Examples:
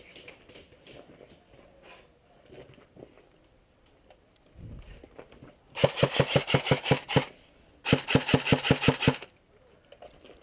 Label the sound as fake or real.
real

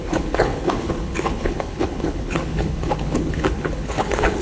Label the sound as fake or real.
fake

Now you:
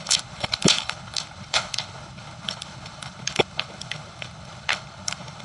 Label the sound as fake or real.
fake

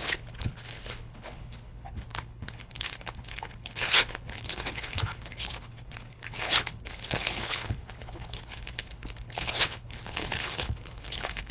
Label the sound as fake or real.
fake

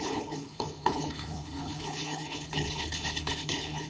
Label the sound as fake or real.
fake